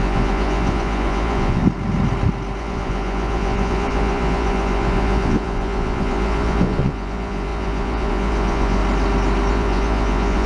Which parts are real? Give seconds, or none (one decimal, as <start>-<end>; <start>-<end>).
1.6-2.6; 8.8-9.5